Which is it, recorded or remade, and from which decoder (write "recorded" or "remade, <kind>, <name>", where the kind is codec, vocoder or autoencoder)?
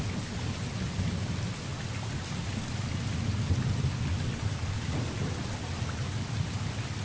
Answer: recorded